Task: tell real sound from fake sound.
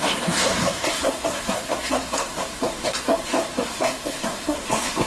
fake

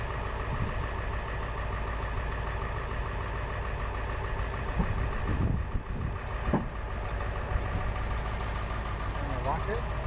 real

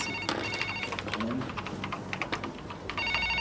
real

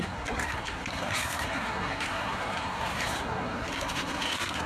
fake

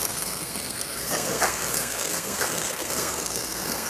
fake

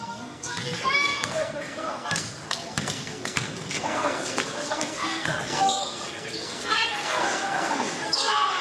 fake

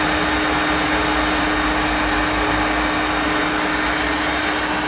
real